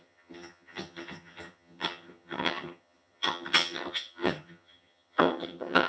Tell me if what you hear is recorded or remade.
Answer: remade